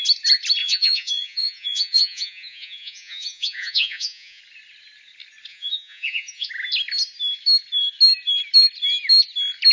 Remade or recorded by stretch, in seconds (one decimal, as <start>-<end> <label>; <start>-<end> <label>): 0.0-0.6 recorded; 0.6-4.4 remade; 4.4-5.5 recorded; 5.5-6.5 remade; 6.5-9.7 recorded